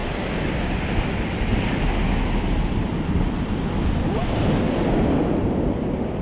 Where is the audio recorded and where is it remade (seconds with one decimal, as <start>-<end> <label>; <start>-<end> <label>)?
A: 0.0-6.2 recorded

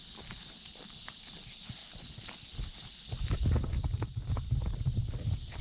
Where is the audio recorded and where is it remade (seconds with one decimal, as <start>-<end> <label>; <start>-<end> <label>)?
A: 0.0-5.6 recorded

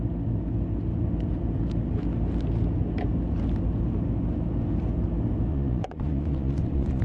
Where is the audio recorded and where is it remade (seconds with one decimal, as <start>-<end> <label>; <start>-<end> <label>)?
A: 0.0-5.5 recorded; 5.5-7.0 remade

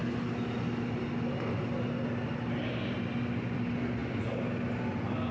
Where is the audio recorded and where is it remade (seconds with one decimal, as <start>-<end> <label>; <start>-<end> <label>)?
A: 0.0-5.3 recorded

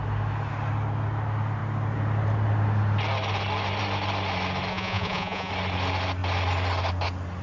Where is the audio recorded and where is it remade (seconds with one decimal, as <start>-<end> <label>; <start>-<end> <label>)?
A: 0.0-4.7 recorded; 4.7-5.5 remade; 5.5-7.4 recorded